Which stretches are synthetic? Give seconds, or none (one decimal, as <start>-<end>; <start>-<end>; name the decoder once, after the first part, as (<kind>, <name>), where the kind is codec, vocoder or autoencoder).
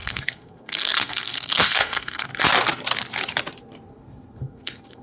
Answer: 0.0-2.3 (codec, SNAC); 3.9-5.0